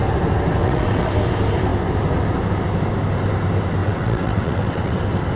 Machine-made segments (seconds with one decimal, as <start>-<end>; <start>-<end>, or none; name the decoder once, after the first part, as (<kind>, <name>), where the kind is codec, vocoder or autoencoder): 0.6-1.1 (vocoder, WaveNeXt); 3.8-5.0